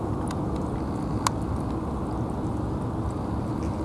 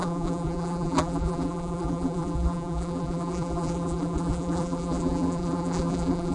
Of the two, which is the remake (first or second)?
second